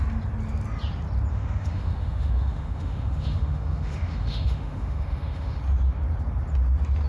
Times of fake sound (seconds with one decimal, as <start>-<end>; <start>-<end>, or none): 1.3-5.6